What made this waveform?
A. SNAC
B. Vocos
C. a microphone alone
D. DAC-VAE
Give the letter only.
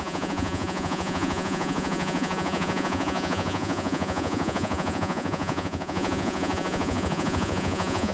B